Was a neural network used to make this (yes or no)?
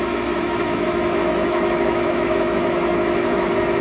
yes